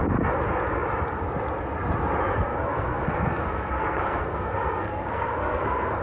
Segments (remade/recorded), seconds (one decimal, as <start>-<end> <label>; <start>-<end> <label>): 0.0-2.3 recorded; 2.3-6.0 remade